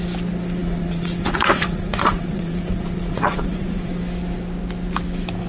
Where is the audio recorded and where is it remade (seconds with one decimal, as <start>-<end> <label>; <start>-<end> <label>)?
0.0-0.6 recorded; 0.6-3.9 remade; 3.9-5.5 recorded